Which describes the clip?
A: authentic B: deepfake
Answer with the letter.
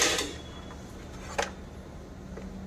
A